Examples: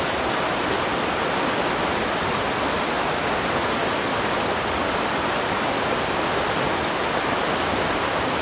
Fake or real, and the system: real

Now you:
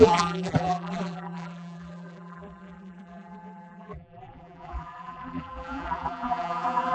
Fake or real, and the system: fake, vocoder, BigVGAN v2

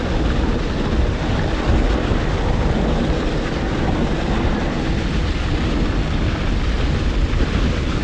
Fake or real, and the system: real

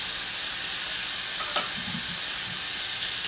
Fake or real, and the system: real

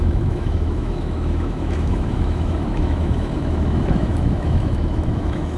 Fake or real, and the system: fake, autoencoder, DAC-VAE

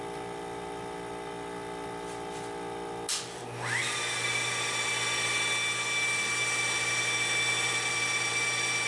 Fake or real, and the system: real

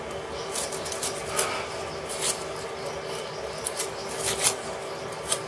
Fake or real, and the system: real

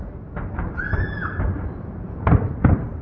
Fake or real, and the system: real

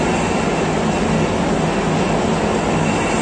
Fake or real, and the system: real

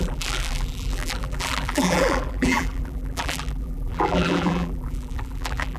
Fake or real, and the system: fake, vocoder, BigVGAN v2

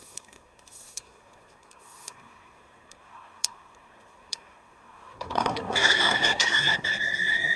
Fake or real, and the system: fake, codec, SNAC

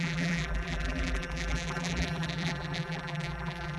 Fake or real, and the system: fake, vocoder, BigVGAN v2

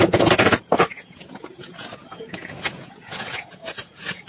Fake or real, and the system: fake, vocoder, Vocos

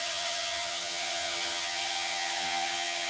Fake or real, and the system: fake, vocoder, HiFi-GAN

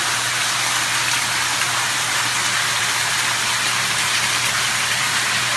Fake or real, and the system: real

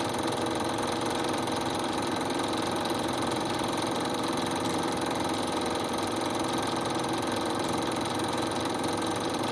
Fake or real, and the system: fake, vocoder, BigVGAN v2